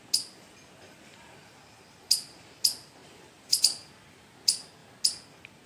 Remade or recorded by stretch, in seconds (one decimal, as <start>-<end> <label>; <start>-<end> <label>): 0.0-5.7 recorded